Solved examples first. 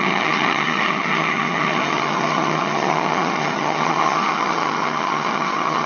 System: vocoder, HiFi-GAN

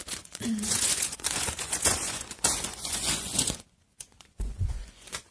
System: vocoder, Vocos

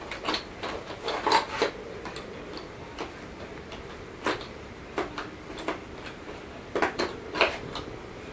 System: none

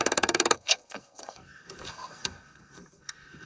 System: codec, SNAC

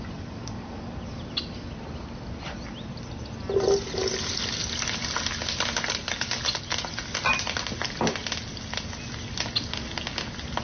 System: none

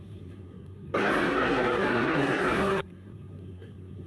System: codec, SNAC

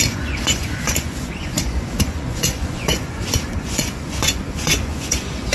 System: vocoder, Vocos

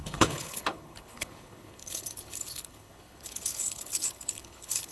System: codec, HILCodec